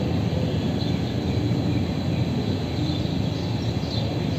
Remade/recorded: recorded